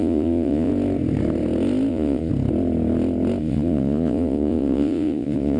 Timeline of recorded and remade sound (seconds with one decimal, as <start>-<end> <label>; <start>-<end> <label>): 0.0-0.7 remade; 0.7-1.9 recorded; 1.9-2.3 remade; 2.3-3.4 recorded; 3.4-5.6 remade